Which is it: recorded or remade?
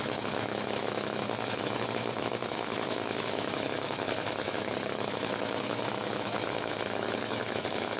remade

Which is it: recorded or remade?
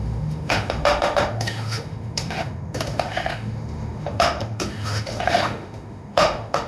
remade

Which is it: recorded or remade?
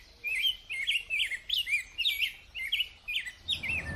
recorded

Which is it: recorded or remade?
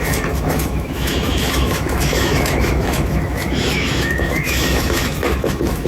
remade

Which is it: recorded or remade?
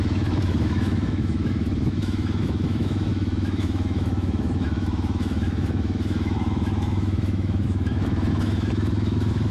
remade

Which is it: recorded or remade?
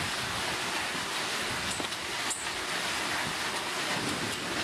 recorded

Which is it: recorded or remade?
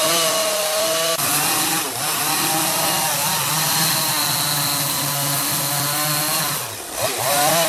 recorded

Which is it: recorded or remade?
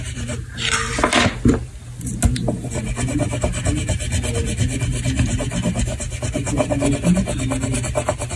recorded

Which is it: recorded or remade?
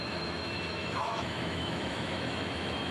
remade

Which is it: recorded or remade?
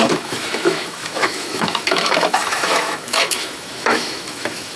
remade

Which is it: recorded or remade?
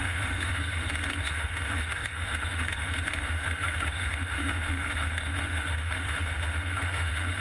remade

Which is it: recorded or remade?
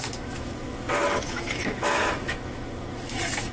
remade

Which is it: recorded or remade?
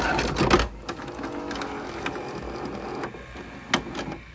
recorded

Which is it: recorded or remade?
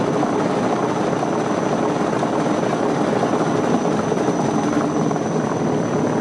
recorded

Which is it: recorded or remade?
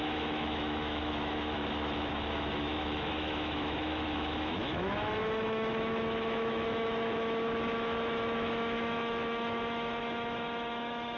remade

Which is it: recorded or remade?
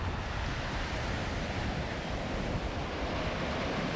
recorded